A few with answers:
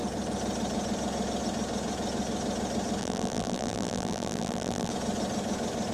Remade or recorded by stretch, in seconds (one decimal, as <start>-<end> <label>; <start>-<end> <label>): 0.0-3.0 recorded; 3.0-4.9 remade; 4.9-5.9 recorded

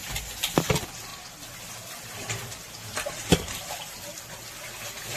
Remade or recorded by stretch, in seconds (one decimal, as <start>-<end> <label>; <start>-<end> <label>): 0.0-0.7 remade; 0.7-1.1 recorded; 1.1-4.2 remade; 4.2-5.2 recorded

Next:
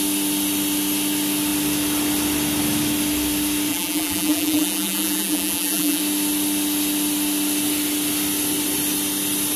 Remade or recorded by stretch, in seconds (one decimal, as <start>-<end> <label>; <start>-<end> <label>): 0.0-3.7 recorded; 3.7-6.0 remade; 6.0-9.6 recorded

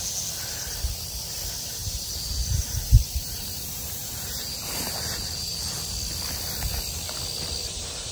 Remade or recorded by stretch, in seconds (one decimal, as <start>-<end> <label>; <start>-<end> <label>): 0.0-1.8 recorded; 1.8-5.9 remade; 5.9-8.1 recorded

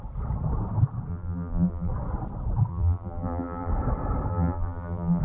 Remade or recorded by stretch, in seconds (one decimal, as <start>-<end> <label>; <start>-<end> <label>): 0.0-1.1 recorded; 1.1-1.9 remade; 1.9-2.7 recorded; 2.7-3.7 remade; 3.7-4.3 recorded; 4.3-5.2 remade